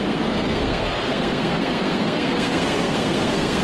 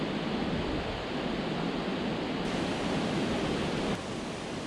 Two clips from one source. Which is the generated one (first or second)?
first